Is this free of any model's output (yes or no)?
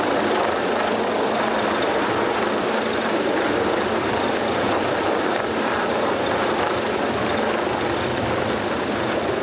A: yes